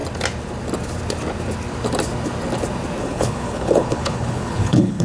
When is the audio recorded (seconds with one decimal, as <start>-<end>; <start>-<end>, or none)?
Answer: 0.0-3.0